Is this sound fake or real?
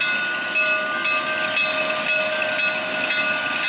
real